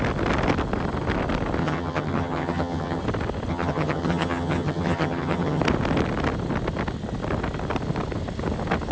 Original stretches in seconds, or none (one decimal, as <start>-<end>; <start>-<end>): 0.0-1.6; 3.0-3.5; 5.6-8.9